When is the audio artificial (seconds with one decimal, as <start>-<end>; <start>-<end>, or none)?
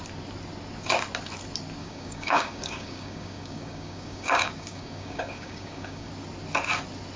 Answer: 1.8-6.1